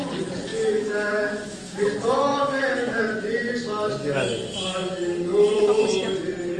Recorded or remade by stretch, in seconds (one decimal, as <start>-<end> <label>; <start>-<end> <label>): 0.0-0.5 recorded; 0.5-1.8 remade; 1.8-2.3 recorded; 2.3-3.0 remade; 3.0-6.6 recorded